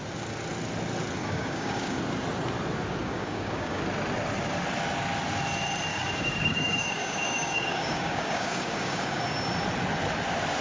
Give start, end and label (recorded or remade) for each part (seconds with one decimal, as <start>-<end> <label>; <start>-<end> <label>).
0.0-1.2 recorded; 1.2-2.0 remade; 2.0-3.0 recorded; 3.0-3.8 remade; 3.8-5.9 recorded; 5.9-9.2 remade; 9.2-10.6 recorded